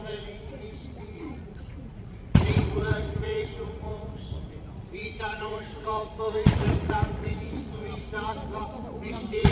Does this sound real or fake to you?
fake